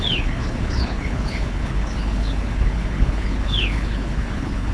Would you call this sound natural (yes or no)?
no